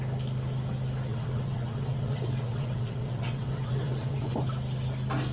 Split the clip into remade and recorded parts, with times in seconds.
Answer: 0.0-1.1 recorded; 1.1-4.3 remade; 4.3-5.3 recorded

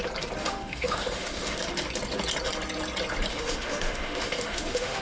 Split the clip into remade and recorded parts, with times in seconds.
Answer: 0.0-0.4 recorded; 0.4-1.6 remade; 1.6-3.3 recorded; 3.3-5.0 remade

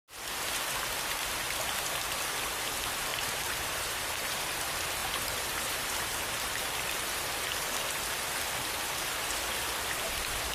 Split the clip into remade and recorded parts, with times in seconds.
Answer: 0.0-3.1 recorded; 3.1-4.5 remade; 4.5-5.0 recorded; 5.0-6.5 remade; 6.5-10.5 recorded

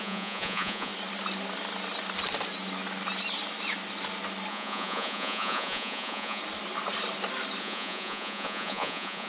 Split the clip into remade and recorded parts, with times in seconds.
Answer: 0.0-0.9 remade; 0.9-4.5 recorded; 4.5-6.4 remade; 6.4-7.6 recorded; 7.6-9.3 remade

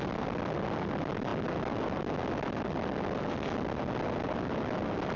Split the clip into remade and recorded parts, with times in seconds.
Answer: 0.0-5.2 recorded